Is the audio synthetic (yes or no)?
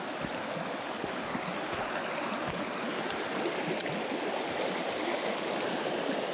no